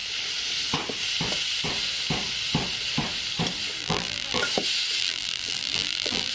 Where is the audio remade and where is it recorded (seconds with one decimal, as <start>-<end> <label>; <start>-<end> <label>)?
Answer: 0.0-3.8 recorded; 3.8-4.4 remade; 4.4-5.0 recorded; 5.0-6.3 remade